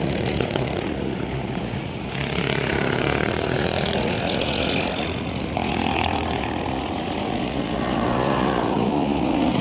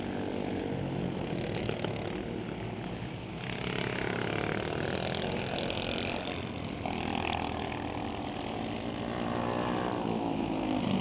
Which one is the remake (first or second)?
first